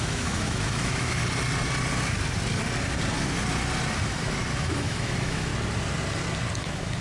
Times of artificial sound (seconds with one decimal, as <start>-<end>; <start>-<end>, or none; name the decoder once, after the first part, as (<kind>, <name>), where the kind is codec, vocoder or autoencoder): 0.0-1.2 (autoencoder, DAC-VAE); 4.6-5.5; 6.6-7.0